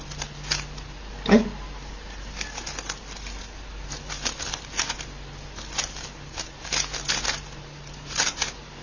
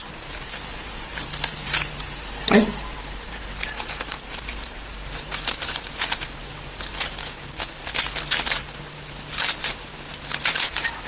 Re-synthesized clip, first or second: second